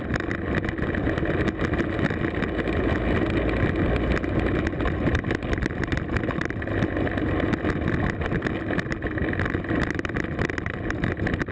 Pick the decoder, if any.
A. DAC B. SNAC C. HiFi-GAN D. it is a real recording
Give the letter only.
D